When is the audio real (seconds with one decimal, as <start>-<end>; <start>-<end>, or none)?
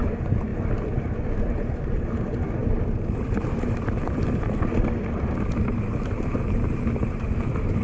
0.5-1.4